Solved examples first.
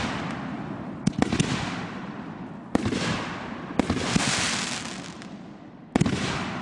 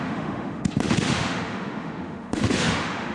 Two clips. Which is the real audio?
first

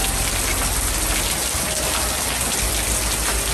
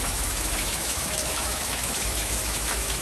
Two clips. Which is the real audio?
first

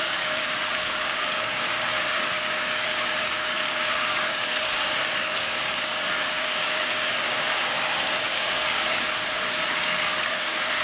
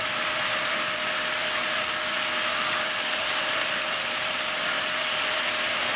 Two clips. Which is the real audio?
second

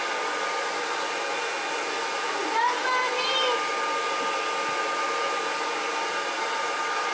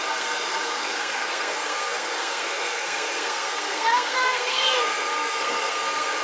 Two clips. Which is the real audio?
first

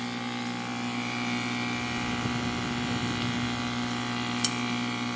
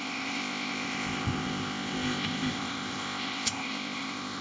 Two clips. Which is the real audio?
first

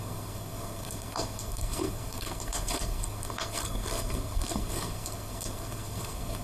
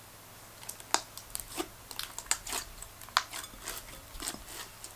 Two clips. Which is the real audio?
second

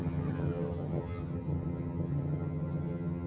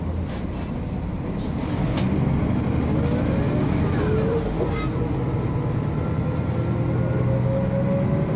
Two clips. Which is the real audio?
second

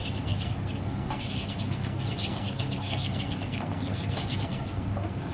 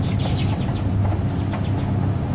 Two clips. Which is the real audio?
second